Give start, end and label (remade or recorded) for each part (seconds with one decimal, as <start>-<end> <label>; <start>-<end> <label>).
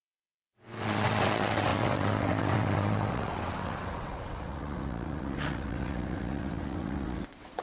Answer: 0.0-7.6 remade